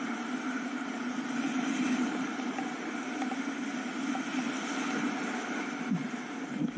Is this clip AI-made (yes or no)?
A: no